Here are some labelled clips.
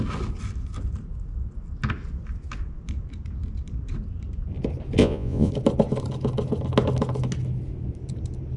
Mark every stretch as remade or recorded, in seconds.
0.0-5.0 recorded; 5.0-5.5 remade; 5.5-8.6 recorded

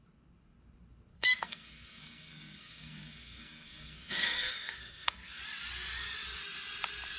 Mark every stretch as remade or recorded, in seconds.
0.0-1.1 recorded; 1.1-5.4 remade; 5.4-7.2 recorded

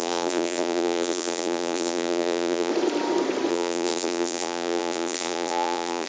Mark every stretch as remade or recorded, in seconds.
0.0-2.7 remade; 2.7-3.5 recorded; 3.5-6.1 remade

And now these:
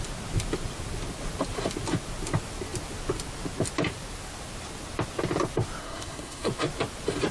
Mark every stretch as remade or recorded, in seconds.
0.0-5.8 recorded; 5.8-6.5 remade; 6.5-7.3 recorded

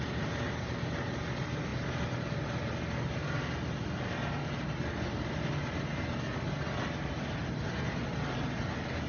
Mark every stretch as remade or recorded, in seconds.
0.0-9.1 recorded